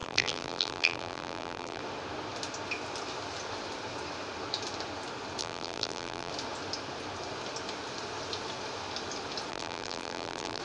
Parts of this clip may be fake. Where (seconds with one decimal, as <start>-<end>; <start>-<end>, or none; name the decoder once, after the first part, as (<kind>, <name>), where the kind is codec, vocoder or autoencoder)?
0.0-1.8 (vocoder, BigVGAN v2); 5.4-6.3; 9.5-10.6